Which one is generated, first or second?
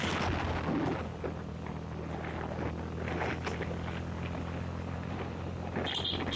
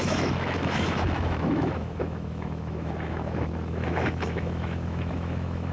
second